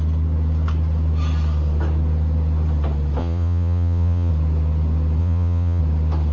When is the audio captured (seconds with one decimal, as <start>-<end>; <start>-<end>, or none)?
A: 0.0-3.2; 4.3-5.2; 5.8-6.3